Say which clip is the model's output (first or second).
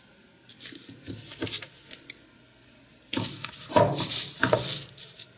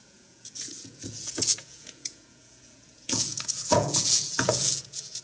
second